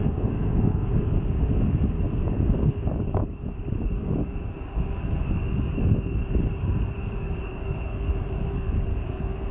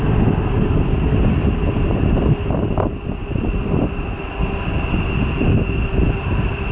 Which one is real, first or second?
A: second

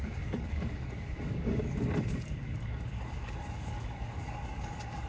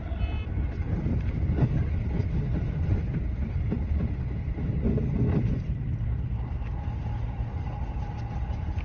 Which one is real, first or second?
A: second